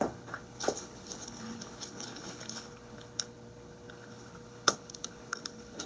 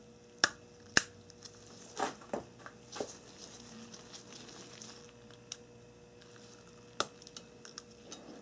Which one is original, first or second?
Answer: second